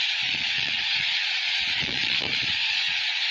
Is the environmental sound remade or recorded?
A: remade